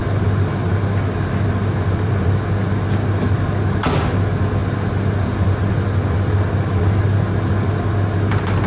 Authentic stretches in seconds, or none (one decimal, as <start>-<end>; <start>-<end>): 0.0-8.7